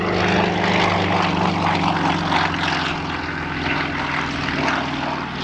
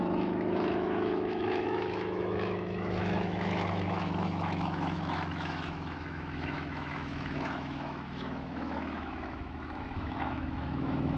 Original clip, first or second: first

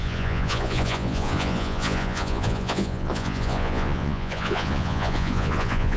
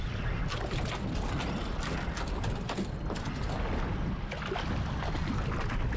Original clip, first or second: second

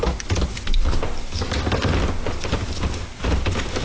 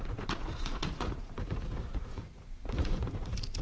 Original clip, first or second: first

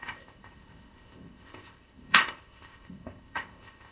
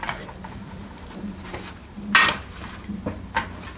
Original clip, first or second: second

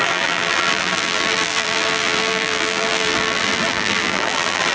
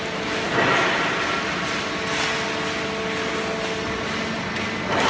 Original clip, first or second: second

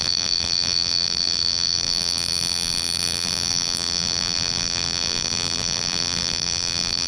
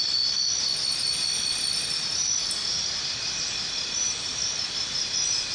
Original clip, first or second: second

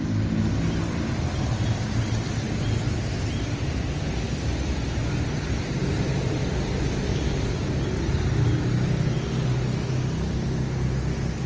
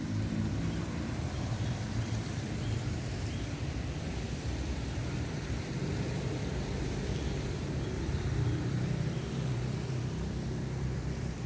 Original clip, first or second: first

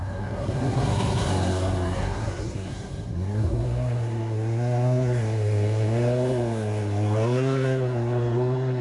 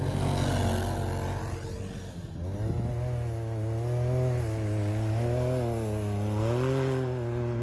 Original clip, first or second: second